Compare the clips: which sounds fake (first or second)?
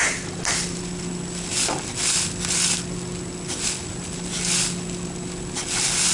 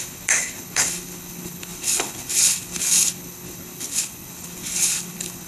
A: second